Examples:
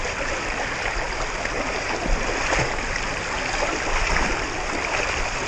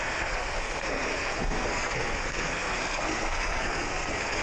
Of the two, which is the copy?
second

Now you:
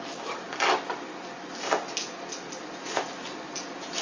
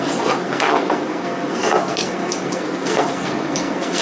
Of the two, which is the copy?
second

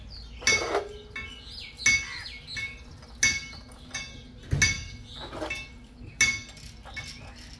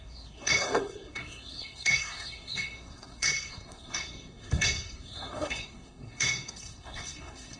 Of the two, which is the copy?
second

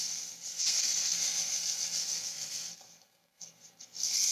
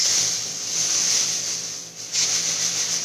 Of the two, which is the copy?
first